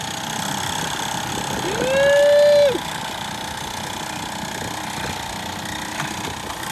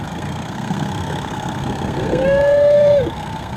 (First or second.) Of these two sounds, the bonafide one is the first